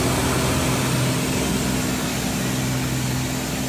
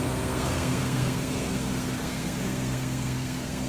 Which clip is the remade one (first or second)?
second